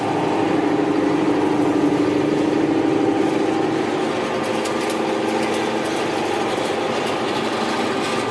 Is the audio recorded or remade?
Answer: recorded